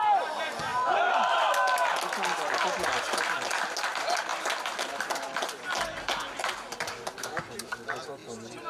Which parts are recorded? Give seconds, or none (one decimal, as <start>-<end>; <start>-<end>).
0.0-8.7